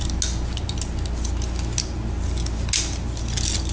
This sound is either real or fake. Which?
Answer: real